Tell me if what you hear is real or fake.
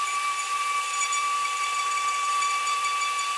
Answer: fake